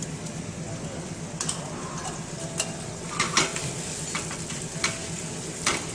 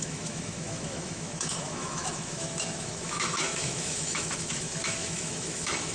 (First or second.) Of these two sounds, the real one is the first